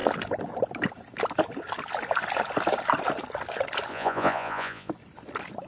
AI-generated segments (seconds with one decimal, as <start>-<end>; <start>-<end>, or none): 3.9-4.9